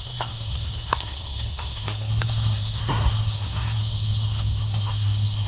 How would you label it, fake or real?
fake